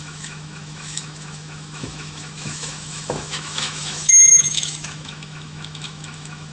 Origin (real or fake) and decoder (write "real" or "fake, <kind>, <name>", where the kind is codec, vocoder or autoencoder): fake, autoencoder, DAC-VAE